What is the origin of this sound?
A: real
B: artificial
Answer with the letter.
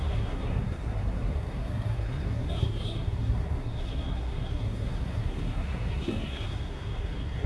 B